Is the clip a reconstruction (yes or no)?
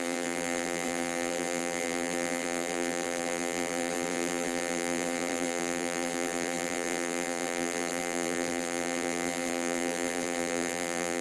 yes